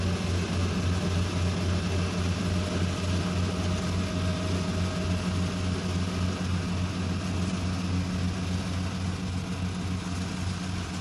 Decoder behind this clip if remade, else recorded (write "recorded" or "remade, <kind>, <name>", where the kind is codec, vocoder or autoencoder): recorded